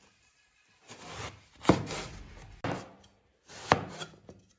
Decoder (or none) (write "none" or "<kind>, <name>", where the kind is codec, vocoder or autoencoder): none